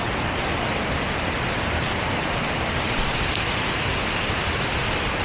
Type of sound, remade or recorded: recorded